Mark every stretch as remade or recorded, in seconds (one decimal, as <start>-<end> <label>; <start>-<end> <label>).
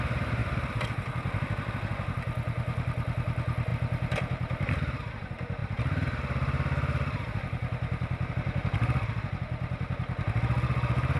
0.0-0.4 recorded; 0.4-1.1 remade; 1.1-3.7 recorded; 3.7-4.7 remade; 4.7-5.6 recorded; 5.6-8.3 remade; 8.3-11.2 recorded